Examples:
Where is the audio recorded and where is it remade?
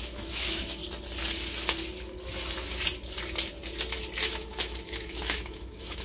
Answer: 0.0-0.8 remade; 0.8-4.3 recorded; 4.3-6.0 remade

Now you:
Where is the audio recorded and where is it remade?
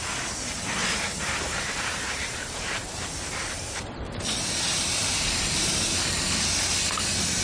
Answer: 0.0-0.8 recorded; 0.8-4.2 remade; 4.2-5.0 recorded; 5.0-6.0 remade; 6.0-7.4 recorded